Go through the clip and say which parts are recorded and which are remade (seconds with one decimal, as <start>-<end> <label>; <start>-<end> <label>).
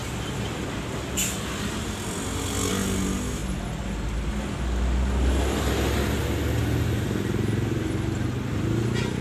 0.0-9.2 recorded